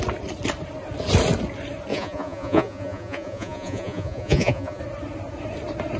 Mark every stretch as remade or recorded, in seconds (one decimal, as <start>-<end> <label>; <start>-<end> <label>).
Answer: 0.0-1.9 recorded; 1.9-4.8 remade; 4.8-6.0 recorded